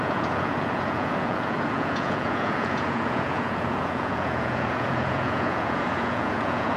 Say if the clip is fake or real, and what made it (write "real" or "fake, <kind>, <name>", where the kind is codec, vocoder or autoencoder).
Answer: fake, vocoder, Vocos